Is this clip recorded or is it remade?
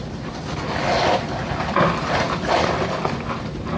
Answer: recorded